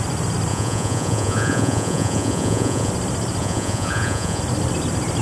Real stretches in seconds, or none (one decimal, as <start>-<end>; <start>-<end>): 0.0-0.5; 2.9-3.4; 4.4-5.2